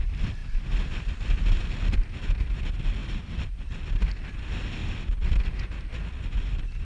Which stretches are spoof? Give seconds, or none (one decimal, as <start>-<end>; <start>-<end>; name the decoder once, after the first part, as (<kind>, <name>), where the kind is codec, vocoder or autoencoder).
0.4-1.6 (vocoder, BigVGAN v2); 3.0-4.3; 4.8-6.8